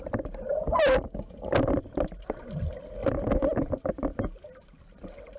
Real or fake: real